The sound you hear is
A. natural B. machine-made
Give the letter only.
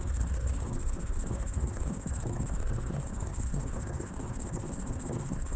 B